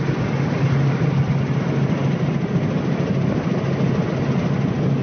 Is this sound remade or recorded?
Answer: recorded